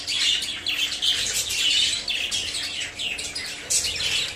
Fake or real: real